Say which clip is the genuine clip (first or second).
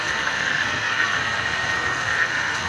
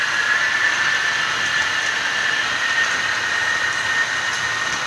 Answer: second